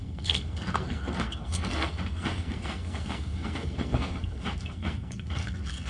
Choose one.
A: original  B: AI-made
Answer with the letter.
B